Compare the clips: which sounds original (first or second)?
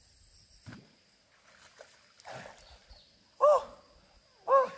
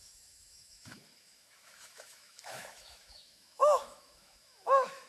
first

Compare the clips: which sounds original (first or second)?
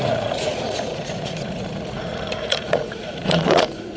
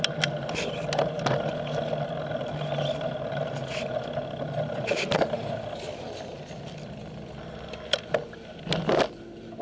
second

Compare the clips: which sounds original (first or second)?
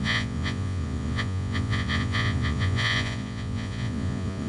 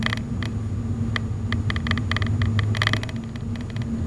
second